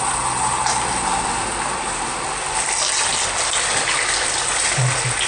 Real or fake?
real